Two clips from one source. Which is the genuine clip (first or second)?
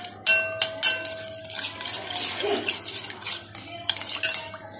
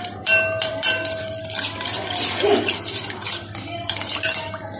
first